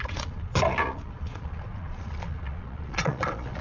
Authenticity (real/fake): fake